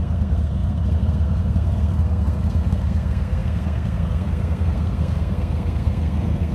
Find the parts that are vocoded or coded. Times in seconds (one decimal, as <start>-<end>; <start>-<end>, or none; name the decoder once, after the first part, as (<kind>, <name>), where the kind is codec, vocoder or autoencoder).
0.0-6.5 (codec, SNAC)